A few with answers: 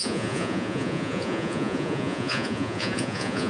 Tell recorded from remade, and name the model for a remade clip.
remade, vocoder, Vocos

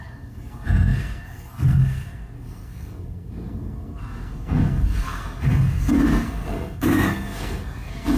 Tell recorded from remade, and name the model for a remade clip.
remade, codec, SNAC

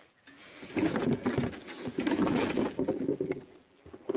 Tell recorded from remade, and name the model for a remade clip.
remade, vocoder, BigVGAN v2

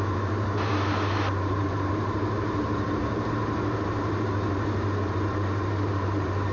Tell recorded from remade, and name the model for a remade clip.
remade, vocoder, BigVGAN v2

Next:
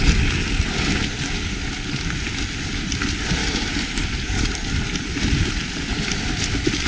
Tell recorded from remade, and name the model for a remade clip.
recorded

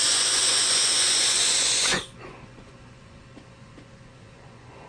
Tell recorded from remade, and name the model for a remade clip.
remade, vocoder, Vocos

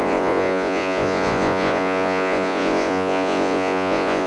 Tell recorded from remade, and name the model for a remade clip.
remade, vocoder, Vocos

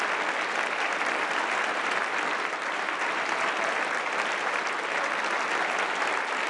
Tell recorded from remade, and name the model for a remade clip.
recorded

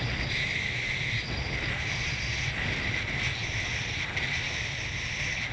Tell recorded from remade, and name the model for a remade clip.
recorded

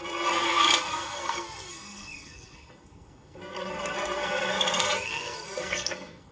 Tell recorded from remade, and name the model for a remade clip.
remade, codec, SNAC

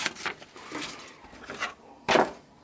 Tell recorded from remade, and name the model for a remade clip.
recorded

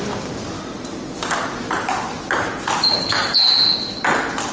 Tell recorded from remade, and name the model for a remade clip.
recorded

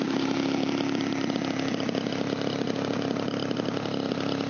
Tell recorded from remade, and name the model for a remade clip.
recorded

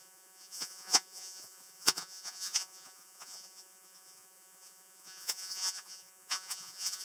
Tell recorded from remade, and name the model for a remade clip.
remade, vocoder, Vocos